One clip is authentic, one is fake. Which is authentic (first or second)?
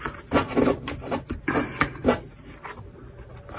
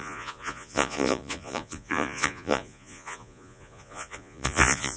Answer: first